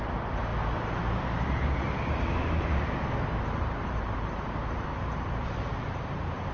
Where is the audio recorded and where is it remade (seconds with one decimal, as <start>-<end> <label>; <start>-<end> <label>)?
0.0-0.5 remade; 0.5-2.1 recorded; 2.1-6.5 remade